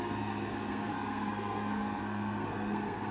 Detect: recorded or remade remade